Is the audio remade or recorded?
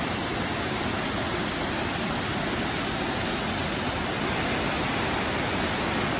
recorded